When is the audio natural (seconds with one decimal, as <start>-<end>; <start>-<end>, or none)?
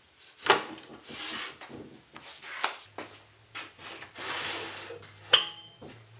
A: 0.0-6.2